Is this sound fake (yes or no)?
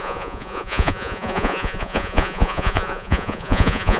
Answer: yes